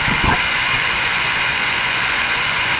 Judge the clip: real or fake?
fake